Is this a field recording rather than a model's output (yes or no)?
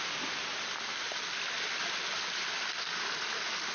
yes